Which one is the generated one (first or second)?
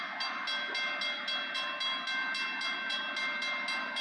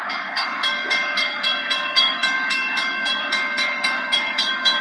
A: second